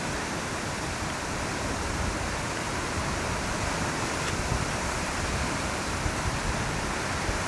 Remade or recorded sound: remade